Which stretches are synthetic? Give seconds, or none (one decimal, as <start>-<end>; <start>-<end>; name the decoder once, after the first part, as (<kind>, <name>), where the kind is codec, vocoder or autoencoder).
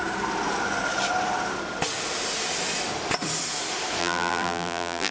4.0-5.1 (vocoder, BigVGAN v2)